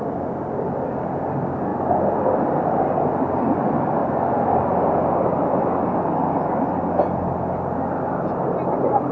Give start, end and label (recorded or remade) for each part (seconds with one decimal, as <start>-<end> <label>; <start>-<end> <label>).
0.0-9.1 recorded